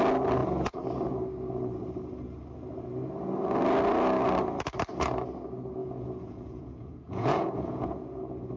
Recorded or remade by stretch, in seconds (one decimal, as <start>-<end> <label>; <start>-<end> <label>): 0.0-5.8 recorded; 5.8-8.2 remade; 8.2-8.6 recorded